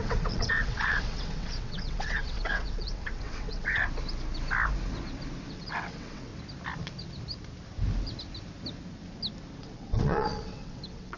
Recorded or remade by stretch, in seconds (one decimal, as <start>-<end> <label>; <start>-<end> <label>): 0.0-3.8 remade; 3.8-5.5 recorded; 5.5-6.3 remade; 6.3-9.6 recorded; 9.6-11.2 remade